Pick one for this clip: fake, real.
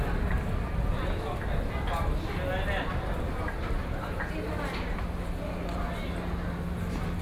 real